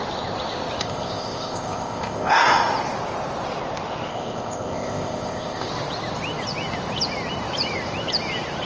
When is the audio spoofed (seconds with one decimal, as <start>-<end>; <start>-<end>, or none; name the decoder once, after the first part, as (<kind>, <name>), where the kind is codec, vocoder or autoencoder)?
0.8-2.4 (codec, ZipCodec); 4.1-5.7